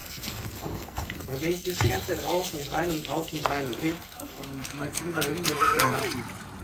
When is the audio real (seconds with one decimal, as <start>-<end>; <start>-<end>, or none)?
6.0-6.6

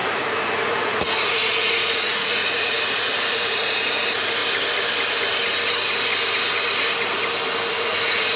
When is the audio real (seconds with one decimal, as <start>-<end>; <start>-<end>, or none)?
4.4-7.7

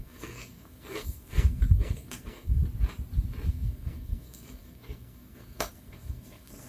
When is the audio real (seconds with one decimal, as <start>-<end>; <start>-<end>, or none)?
2.6-3.5

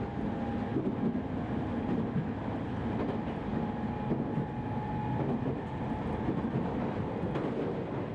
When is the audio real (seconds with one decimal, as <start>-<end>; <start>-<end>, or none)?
0.0-8.1